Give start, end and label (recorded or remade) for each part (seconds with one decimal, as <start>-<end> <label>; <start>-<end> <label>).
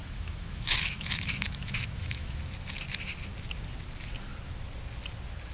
0.0-2.4 remade; 2.4-5.5 recorded